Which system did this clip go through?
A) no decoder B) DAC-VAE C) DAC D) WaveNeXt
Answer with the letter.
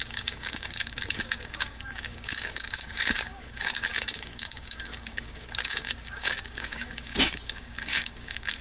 C